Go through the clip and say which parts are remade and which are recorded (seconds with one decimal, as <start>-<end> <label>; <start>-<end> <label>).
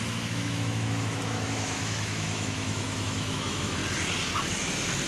0.0-3.8 remade; 3.8-5.1 recorded